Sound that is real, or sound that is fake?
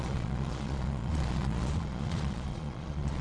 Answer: fake